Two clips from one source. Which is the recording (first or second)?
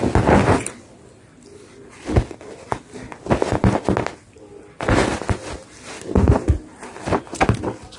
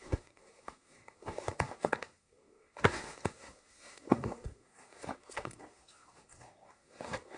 first